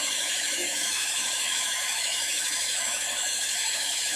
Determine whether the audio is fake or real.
fake